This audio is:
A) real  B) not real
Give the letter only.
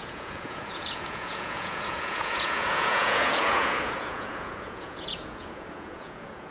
B